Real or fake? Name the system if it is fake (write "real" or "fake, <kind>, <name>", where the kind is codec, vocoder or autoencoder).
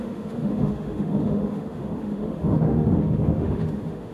fake, autoencoder, DAC-VAE